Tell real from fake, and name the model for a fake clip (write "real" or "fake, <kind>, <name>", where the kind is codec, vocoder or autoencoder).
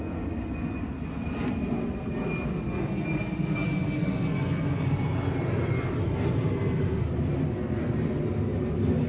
real